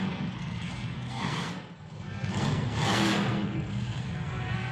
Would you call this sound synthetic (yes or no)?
yes